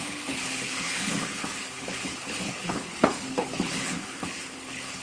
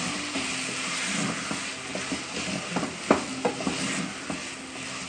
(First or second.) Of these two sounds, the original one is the second